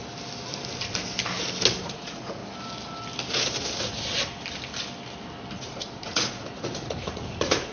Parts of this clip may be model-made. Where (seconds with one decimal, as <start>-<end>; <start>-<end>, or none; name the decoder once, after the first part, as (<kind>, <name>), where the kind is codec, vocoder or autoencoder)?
1.8-2.4 (vocoder, Vocos); 5.6-7.7